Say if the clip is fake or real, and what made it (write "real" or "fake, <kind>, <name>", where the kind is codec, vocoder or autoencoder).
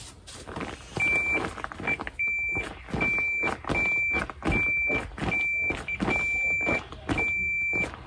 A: real